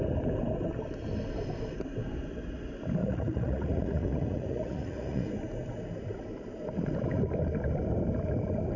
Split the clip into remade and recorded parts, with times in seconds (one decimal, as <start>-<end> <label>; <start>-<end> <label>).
0.0-3.0 recorded; 3.0-5.3 remade; 5.3-8.8 recorded